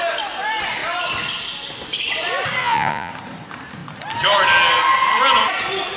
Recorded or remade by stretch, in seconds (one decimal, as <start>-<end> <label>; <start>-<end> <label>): 0.0-2.6 recorded; 2.6-3.1 remade; 3.1-6.0 recorded